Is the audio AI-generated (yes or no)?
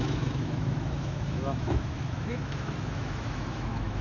yes